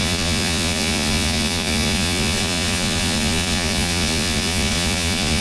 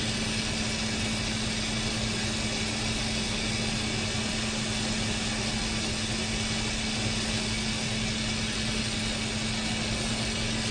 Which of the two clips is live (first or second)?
second